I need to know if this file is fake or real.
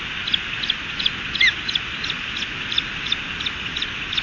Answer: real